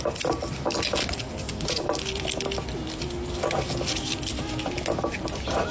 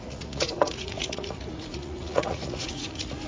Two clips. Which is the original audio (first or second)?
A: first